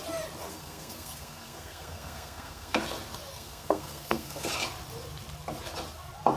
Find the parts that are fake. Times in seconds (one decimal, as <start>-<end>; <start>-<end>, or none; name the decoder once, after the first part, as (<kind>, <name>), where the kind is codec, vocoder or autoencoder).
0.5-2.8 (codec, SNAC); 3.3-4.5